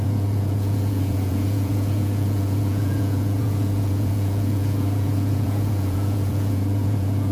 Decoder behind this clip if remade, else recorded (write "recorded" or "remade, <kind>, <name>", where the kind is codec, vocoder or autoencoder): remade, vocoder, Vocos